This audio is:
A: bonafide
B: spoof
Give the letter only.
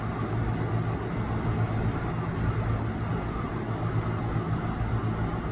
A